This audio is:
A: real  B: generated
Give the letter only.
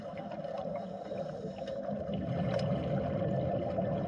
A